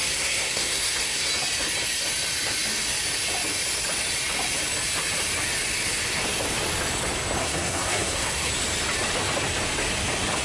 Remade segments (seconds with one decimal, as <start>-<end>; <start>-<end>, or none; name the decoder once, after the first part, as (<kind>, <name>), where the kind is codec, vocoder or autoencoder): 0.0-1.3 (codec, SNAC); 7.4-8.5